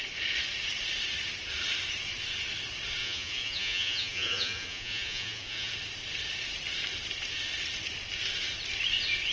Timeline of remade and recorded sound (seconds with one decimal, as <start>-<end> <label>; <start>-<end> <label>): 0.0-3.0 recorded; 3.0-5.7 remade; 5.7-9.3 recorded